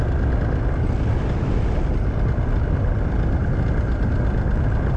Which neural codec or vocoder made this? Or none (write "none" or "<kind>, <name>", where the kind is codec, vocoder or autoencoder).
none